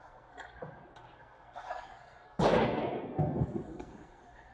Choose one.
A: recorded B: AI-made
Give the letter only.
B